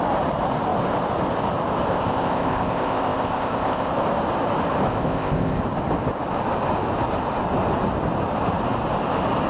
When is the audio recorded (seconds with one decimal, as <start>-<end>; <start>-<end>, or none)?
0.0-1.9; 3.9-4.9; 5.6-9.5